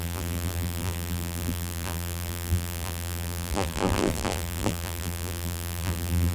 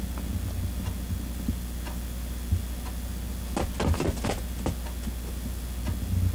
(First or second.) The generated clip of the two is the first